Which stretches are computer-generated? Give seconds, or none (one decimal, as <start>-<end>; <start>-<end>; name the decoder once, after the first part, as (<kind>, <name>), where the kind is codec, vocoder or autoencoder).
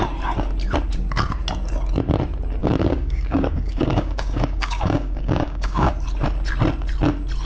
2.6-5.9 (codec, DAC)